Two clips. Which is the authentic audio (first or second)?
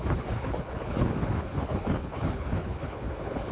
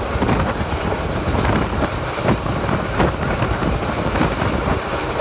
second